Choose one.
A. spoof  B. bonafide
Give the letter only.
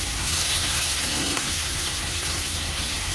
A